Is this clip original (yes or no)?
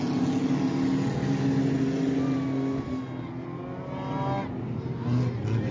yes